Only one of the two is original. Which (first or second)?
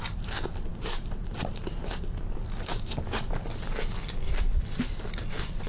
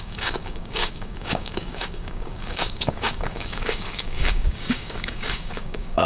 first